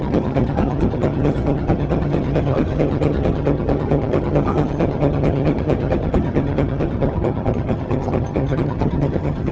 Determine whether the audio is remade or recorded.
remade